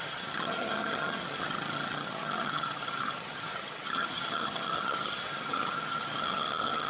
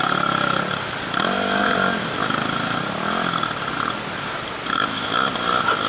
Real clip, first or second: second